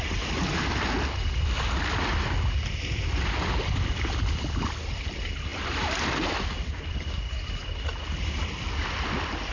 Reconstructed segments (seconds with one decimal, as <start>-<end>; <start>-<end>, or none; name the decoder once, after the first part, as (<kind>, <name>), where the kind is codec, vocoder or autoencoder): none